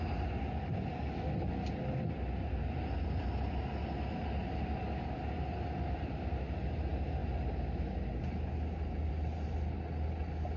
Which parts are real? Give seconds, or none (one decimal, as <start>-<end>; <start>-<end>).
0.0-10.6

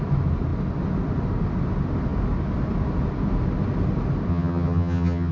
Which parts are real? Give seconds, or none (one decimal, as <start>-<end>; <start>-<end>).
0.0-4.3

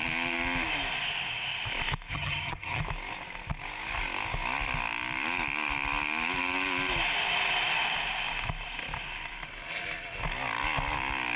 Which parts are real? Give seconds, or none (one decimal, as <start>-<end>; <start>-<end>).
0.0-2.1; 2.8-11.4

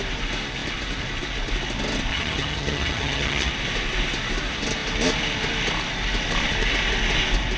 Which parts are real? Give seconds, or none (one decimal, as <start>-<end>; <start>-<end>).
0.0-2.1; 3.5-7.6

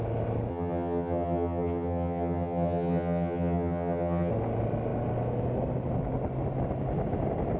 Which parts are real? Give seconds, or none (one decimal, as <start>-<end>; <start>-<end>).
0.0-0.5; 4.3-7.6

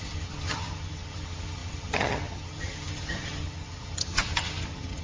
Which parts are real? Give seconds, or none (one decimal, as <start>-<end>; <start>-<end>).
none

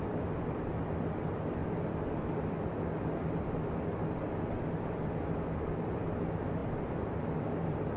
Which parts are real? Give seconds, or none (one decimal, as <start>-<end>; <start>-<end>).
0.0-8.0

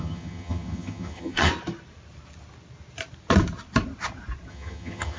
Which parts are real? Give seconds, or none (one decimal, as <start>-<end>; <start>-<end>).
1.5-4.5